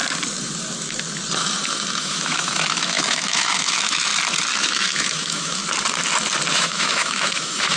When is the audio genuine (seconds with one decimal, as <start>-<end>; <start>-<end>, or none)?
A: 0.0-2.0; 4.1-4.6; 5.6-6.5